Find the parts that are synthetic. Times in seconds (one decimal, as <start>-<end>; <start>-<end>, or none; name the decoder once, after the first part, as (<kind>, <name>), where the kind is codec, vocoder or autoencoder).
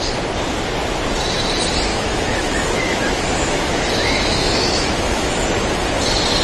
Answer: 1.9-5.3 (autoencoder, DAC-VAE)